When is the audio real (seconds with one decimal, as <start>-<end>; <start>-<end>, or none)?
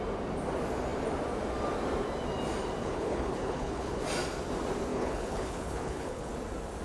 0.0-2.8; 4.0-4.9; 6.3-6.8